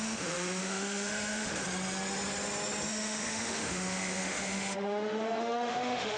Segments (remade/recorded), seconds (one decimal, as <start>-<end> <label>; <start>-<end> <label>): 0.0-1.6 remade; 1.6-2.9 recorded; 2.9-6.2 remade